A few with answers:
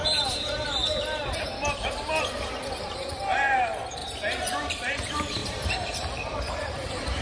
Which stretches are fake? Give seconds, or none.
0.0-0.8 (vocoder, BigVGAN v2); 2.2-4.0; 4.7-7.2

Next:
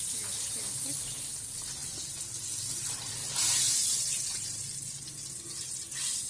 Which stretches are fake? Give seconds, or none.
none

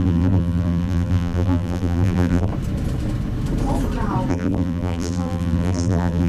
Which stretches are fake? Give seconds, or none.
0.0-2.5 (vocoder, BigVGAN v2); 4.3-6.3

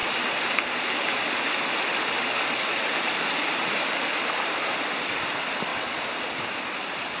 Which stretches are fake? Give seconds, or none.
2.7-3.9 (vocoder, BigVGAN v2)

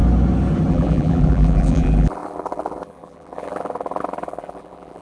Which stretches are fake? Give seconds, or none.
0.7-5.0 (vocoder, BigVGAN v2)

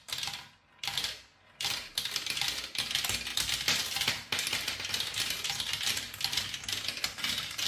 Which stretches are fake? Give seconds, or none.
none